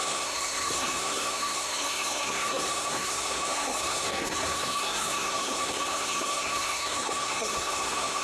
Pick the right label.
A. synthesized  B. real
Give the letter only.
A